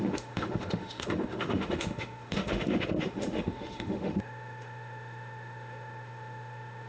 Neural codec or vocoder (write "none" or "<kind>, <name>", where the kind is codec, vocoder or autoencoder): autoencoder, DAC-VAE